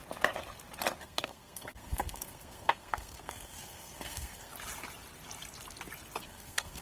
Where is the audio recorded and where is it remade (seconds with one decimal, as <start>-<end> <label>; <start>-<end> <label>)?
0.0-1.0 recorded; 1.0-4.5 remade; 4.5-6.2 recorded; 6.2-6.8 remade